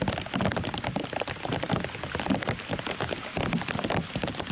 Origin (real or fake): fake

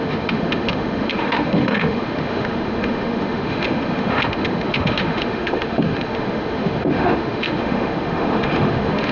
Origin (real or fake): fake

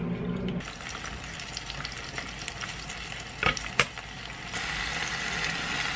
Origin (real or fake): real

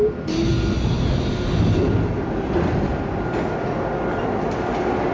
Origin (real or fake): real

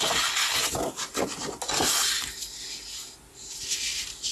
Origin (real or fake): real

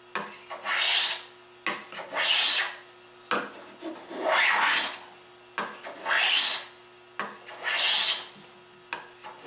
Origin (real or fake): real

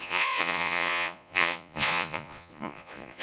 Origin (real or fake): fake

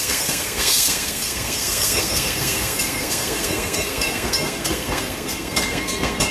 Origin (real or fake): fake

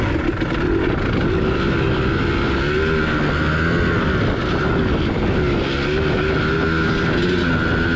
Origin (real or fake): real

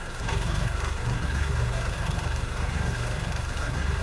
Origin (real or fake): fake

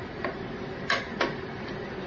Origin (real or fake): real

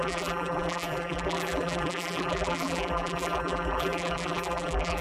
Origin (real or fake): fake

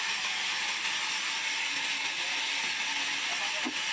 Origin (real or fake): real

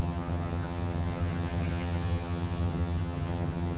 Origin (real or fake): fake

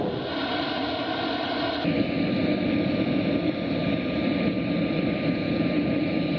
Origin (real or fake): fake